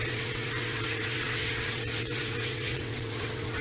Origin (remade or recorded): remade